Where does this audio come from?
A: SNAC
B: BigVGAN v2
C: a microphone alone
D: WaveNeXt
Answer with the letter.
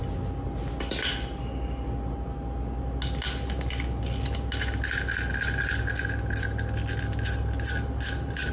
C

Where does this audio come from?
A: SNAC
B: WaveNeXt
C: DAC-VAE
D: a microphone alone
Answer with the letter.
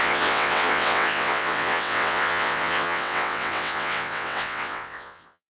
B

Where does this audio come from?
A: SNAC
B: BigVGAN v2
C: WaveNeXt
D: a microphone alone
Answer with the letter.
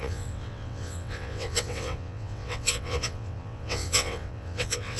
C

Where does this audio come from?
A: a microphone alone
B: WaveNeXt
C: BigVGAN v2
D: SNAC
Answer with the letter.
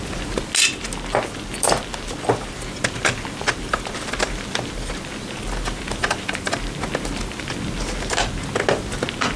A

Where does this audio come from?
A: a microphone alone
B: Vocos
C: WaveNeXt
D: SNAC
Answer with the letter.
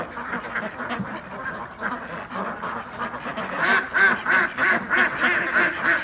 A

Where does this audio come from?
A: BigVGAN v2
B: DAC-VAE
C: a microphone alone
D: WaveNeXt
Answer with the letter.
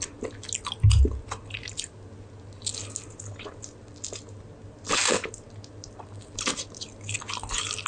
C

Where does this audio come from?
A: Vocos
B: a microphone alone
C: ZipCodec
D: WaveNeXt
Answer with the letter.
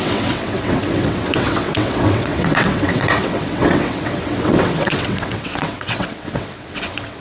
D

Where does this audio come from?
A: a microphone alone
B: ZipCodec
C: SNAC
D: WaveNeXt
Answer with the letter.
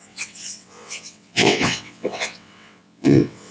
D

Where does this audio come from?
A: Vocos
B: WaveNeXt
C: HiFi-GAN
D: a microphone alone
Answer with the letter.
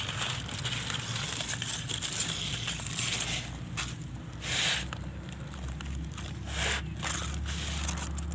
D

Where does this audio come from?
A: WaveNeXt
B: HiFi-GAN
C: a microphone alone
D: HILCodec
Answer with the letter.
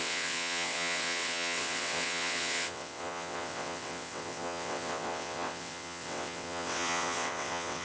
A